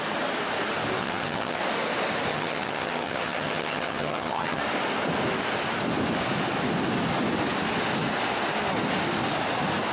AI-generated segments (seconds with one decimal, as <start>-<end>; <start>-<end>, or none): 1.0-1.6; 2.3-4.6